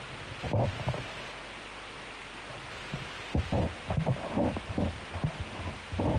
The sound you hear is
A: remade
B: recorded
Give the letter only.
B